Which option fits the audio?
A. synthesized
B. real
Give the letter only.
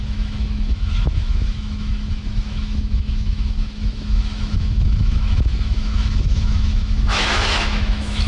A